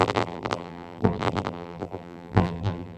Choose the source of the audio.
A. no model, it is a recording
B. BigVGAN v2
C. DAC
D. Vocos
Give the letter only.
B